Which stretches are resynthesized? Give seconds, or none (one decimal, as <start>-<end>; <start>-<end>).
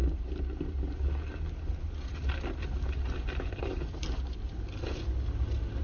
none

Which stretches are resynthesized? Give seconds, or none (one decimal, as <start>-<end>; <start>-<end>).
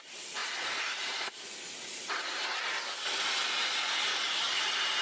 4.1-4.6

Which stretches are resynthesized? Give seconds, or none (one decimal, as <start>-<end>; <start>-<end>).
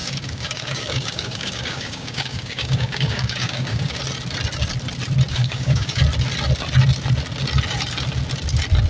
0.0-4.0; 5.3-6.0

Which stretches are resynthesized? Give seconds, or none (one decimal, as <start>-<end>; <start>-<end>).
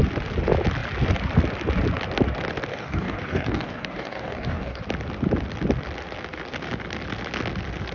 2.7-4.8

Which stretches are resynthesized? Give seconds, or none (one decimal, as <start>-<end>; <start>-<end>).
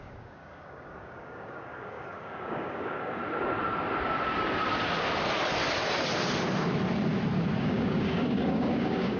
0.0-3.2; 7.6-9.2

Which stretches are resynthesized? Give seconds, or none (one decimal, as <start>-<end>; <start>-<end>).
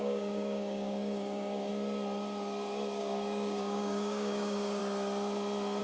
0.0-1.7; 3.0-4.8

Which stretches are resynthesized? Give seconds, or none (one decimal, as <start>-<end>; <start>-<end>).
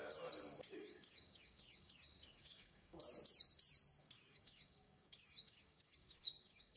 0.6-3.0; 4.0-6.8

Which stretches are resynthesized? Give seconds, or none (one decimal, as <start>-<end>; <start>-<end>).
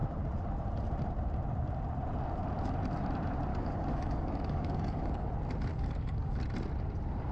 3.5-5.3; 5.7-6.4